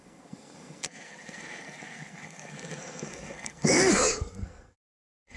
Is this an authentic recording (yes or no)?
no